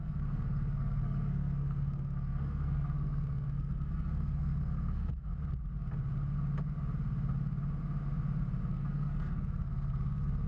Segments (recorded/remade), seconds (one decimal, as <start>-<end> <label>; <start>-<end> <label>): 0.0-5.3 remade; 5.3-8.7 recorded; 8.7-10.5 remade